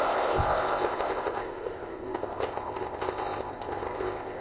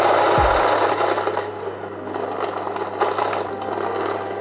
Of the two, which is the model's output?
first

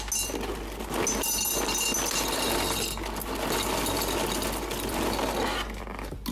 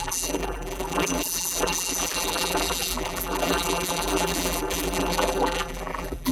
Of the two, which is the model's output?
second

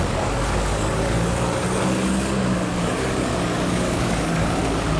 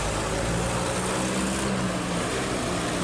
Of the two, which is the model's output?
first